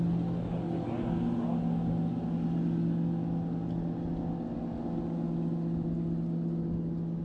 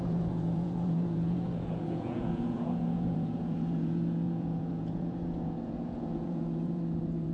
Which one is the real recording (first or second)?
first